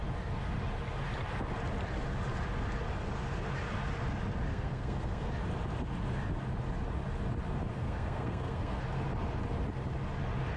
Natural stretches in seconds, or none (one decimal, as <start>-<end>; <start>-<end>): 0.0-4.5; 5.3-7.7; 8.8-10.6